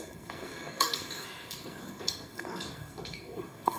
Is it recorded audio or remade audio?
remade